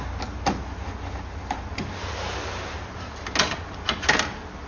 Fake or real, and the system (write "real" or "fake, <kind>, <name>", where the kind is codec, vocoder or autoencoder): real